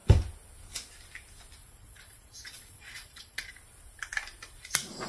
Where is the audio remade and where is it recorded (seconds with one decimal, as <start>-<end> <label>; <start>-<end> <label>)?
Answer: 0.0-1.6 recorded; 1.6-3.5 remade; 3.5-5.1 recorded